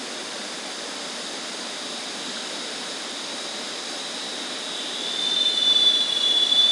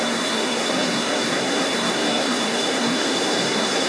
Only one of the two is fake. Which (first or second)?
second